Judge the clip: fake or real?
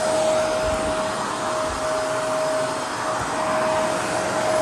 real